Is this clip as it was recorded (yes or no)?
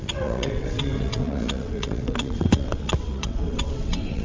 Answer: no